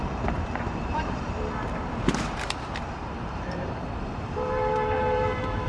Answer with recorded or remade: remade